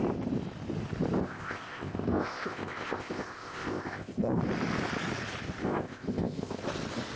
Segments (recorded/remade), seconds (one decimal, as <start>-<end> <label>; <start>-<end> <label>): 0.0-1.2 recorded; 1.2-4.4 remade; 4.4-5.6 recorded; 5.6-6.6 remade; 6.6-7.2 recorded